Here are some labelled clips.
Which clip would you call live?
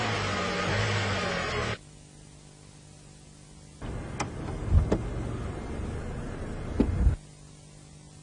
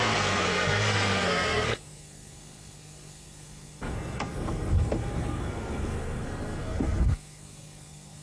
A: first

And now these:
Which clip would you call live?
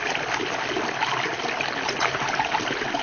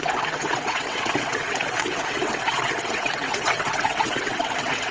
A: first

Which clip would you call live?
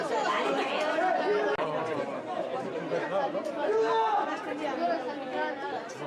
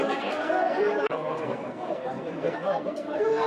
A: first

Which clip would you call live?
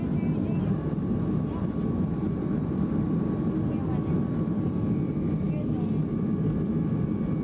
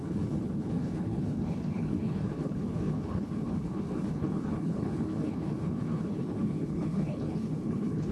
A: first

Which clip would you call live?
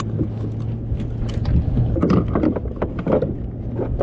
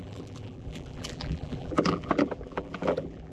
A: first